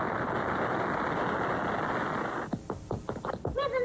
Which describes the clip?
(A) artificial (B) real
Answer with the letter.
B